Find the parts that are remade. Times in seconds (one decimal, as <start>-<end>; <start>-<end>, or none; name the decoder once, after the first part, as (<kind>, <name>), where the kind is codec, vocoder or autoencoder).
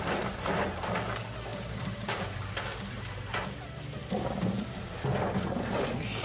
1.5-2.5 (vocoder, BigVGAN v2)